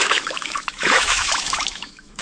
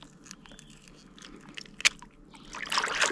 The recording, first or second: second